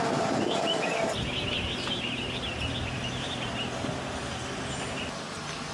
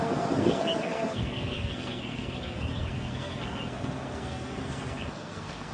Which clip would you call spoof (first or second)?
second